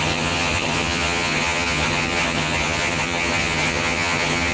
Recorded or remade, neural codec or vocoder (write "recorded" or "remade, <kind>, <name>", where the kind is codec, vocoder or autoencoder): remade, vocoder, HiFi-GAN